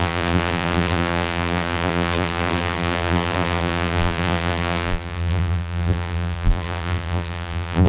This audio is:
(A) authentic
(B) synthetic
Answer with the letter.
B